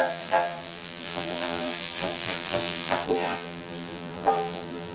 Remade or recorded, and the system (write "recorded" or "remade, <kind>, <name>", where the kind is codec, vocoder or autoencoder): remade, vocoder, BigVGAN v2